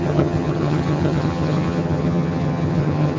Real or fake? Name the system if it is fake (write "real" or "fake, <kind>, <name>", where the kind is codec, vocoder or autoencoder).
fake, vocoder, HiFi-GAN